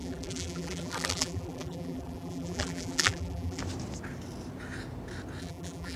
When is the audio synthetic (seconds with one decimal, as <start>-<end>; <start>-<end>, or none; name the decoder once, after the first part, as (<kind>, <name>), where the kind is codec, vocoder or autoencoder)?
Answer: 0.0-3.6 (vocoder, BigVGAN v2); 5.4-6.0